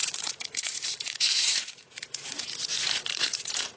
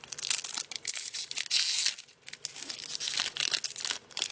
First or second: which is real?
second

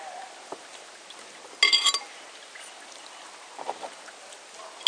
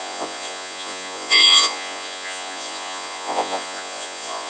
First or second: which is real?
first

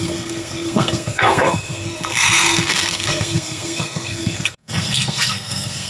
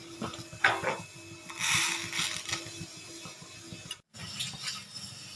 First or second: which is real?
second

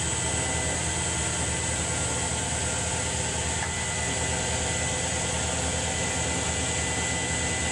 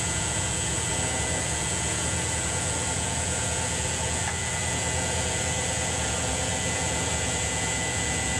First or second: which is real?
first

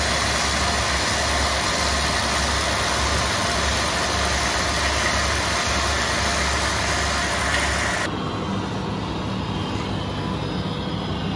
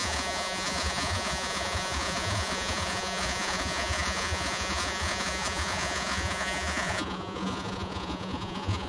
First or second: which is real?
first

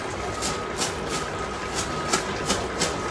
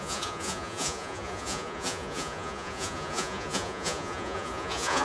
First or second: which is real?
first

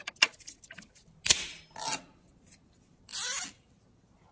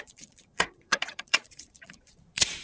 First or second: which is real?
first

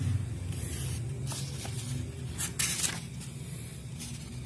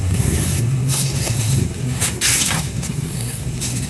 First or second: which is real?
first